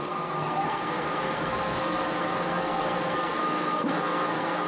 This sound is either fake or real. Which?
fake